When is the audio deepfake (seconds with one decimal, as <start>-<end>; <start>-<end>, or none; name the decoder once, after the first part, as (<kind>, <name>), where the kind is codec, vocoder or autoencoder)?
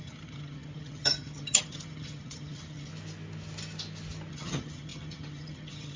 0.0-2.9 (vocoder, HiFi-GAN); 4.3-6.0